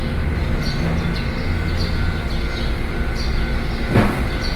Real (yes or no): yes